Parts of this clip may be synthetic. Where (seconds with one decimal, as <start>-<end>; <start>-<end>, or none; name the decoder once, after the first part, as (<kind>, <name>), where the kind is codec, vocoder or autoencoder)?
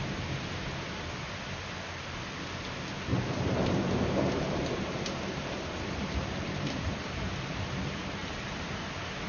3.1-7.6 (vocoder, BigVGAN v2); 8.2-8.8